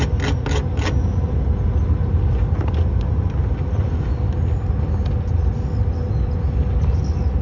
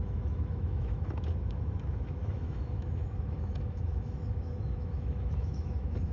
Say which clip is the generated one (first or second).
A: second